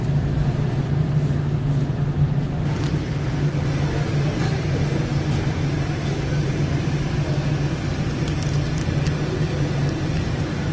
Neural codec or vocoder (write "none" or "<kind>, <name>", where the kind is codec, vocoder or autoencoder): none